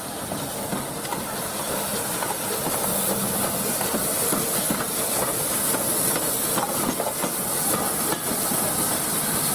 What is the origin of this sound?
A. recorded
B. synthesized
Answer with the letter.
A